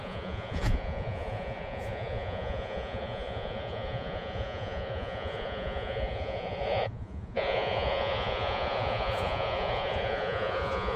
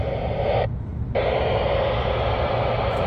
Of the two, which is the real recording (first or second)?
second